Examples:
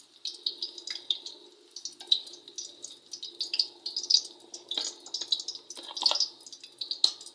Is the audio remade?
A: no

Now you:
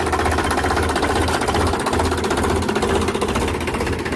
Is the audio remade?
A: no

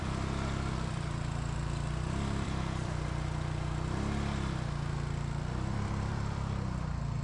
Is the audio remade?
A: yes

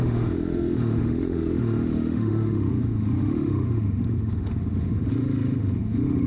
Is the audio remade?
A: yes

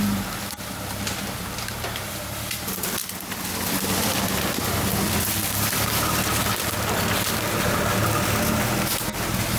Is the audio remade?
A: no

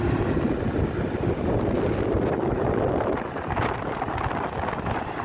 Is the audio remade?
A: yes